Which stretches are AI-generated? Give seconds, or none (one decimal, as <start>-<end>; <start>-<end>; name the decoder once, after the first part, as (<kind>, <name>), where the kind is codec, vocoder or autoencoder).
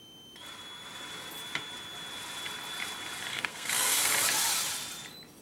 3.3-4.1 (codec, SNAC)